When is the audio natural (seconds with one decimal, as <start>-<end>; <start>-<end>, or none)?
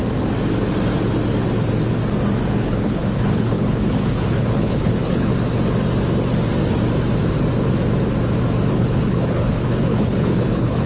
0.0-2.5; 5.3-8.7